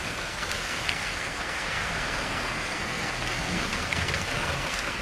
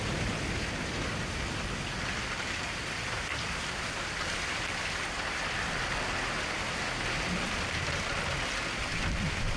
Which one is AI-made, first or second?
first